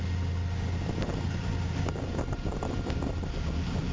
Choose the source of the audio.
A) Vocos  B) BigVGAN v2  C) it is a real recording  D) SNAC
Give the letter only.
C